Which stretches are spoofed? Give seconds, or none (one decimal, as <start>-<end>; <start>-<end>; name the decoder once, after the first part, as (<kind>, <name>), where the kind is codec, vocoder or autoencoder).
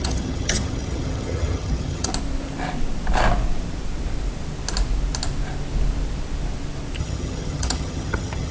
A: 0.0-2.1 (vocoder, HiFi-GAN); 7.0-8.5